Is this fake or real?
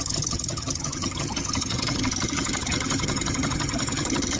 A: fake